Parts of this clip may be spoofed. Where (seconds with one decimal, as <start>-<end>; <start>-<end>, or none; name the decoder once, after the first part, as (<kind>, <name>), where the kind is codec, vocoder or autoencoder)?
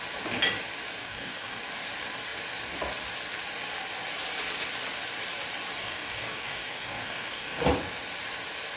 1.0-1.6 (codec, DAC); 5.8-7.6